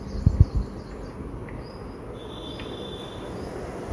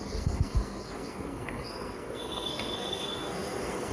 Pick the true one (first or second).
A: first